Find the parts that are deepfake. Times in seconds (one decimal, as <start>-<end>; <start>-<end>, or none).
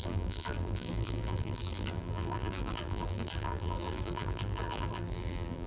0.0-5.7